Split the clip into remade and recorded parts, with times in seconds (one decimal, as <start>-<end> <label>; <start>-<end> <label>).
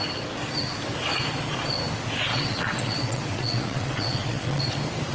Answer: 0.0-2.3 recorded; 2.3-4.6 remade; 4.6-5.1 recorded